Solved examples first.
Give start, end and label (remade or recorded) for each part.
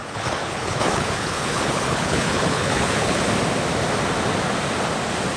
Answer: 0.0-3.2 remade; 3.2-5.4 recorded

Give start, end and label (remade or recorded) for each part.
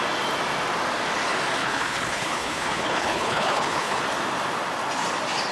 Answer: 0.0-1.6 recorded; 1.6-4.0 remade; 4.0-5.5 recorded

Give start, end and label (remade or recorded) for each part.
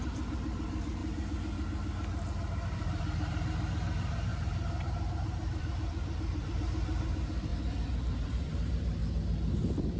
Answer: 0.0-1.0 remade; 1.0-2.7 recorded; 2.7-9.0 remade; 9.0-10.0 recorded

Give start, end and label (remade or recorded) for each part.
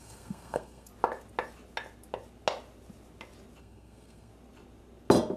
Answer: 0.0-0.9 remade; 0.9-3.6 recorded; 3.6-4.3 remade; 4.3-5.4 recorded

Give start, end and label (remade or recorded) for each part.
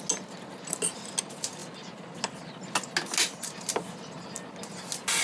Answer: 0.0-5.2 recorded